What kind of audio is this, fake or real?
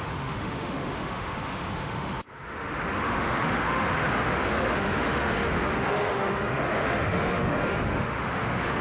fake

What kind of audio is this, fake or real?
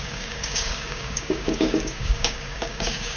fake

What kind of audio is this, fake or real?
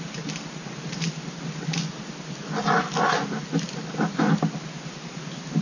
real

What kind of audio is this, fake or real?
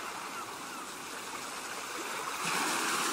real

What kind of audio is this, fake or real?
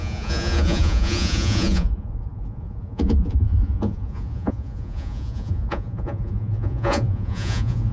fake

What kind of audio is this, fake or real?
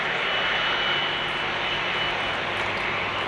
real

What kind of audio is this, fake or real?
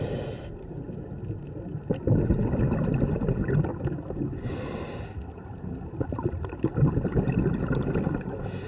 real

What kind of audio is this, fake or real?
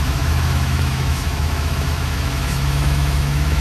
fake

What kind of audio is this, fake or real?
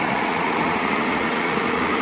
fake